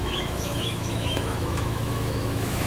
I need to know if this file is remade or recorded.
remade